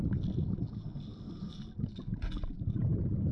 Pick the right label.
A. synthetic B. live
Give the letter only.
B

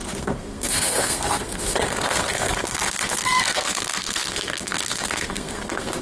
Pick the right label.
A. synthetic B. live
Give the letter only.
A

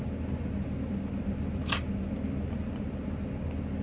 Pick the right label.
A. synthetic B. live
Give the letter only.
B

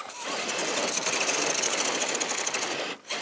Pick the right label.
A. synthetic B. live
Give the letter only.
B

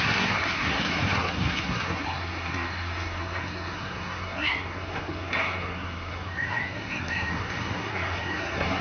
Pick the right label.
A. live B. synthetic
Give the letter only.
B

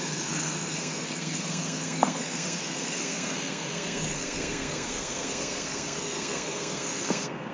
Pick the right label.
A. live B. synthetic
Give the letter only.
B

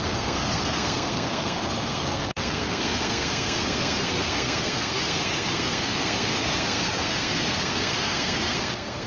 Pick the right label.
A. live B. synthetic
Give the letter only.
B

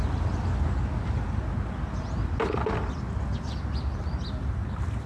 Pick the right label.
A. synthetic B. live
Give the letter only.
B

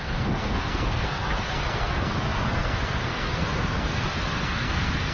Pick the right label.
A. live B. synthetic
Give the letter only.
B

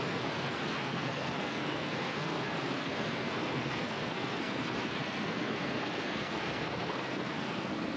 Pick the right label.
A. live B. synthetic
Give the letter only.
B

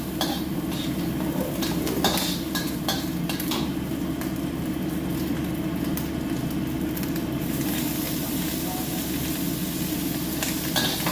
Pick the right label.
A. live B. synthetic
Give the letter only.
A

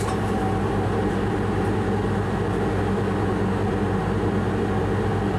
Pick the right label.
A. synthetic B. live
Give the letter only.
B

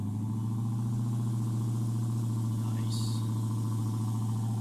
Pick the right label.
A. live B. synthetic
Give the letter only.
A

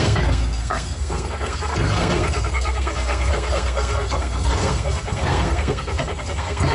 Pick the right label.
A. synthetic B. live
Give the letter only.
A